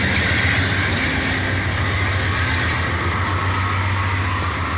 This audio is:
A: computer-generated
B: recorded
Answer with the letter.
B